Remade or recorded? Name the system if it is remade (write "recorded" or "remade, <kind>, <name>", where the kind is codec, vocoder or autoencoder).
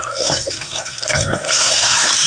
remade, codec, SNAC